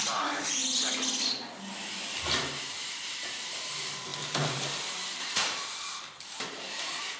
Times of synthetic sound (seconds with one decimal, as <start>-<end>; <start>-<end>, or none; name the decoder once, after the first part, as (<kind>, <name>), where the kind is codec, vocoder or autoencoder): 0.0-0.6 (vocoder, BigVGAN v2); 2.6-7.2